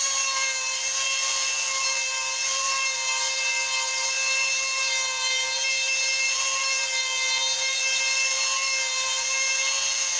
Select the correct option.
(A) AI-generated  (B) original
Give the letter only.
A